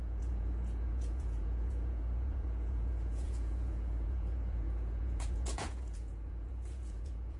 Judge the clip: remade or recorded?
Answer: remade